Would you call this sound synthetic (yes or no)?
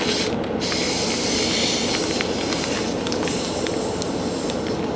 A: no